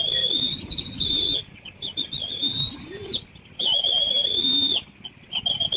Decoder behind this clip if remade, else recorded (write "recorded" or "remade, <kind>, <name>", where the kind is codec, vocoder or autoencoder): recorded